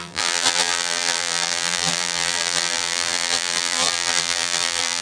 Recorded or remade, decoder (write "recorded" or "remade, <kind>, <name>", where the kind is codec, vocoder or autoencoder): remade, vocoder, BigVGAN v2